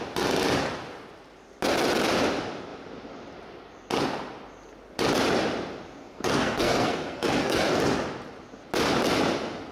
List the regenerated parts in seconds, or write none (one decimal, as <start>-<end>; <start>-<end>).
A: 6.0-7.8